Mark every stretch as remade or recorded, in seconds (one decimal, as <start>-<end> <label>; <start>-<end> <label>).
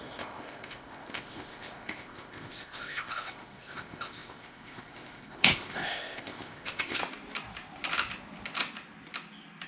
0.0-7.0 remade; 7.0-9.7 recorded